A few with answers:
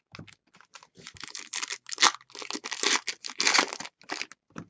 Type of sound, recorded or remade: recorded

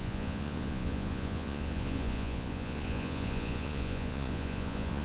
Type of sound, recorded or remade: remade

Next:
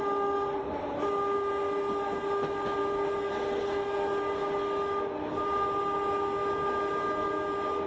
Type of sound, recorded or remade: recorded